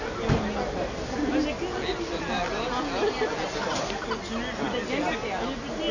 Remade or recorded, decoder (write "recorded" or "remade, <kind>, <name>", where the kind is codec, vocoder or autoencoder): recorded